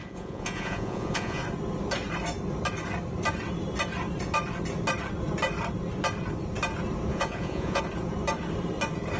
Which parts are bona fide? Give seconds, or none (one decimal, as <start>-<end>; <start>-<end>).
1.4-7.1; 7.8-9.2